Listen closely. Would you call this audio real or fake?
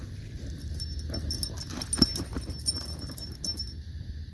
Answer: real